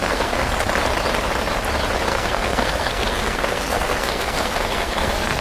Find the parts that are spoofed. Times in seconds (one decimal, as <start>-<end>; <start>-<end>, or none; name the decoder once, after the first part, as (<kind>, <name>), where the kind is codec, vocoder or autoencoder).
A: 0.0-0.5 (codec, SNAC); 2.1-5.4